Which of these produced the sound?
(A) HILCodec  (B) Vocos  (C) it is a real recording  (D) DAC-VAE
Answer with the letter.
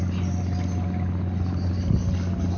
C